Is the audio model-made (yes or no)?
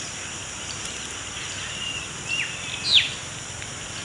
no